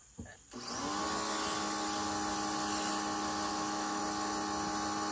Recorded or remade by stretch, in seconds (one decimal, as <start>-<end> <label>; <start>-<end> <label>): 0.0-3.5 recorded; 3.5-4.0 remade; 4.0-5.1 recorded